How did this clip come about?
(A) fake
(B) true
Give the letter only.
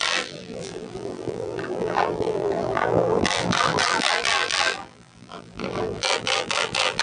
A